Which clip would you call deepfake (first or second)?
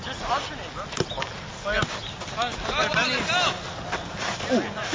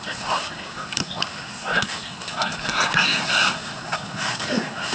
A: second